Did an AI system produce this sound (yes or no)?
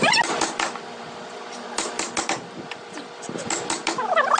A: no